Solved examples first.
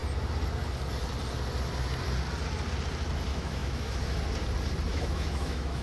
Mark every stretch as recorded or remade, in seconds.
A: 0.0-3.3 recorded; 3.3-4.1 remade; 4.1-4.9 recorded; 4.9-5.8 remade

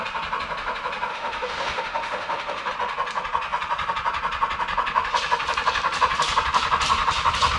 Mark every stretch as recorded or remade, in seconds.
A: 0.0-1.1 recorded; 1.1-2.7 remade; 2.7-7.6 recorded

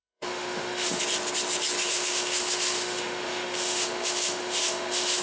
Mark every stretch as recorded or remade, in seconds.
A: 0.0-1.0 remade; 1.0-1.8 recorded; 1.8-5.2 remade

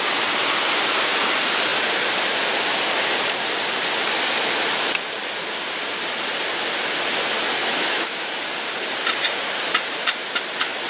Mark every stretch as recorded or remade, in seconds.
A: 0.0-7.6 recorded; 7.6-8.3 remade; 8.3-10.9 recorded

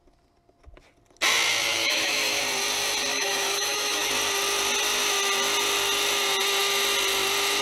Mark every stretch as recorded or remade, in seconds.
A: 0.0-1.6 recorded; 1.6-2.4 remade; 2.4-3.1 recorded; 3.1-4.1 remade; 4.1-7.6 recorded

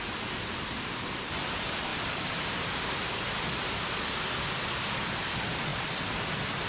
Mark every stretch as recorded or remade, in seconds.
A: 0.0-6.7 recorded

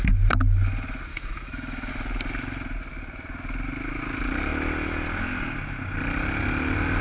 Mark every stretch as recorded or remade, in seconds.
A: 0.0-1.1 recorded; 1.1-1.9 remade; 1.9-7.0 recorded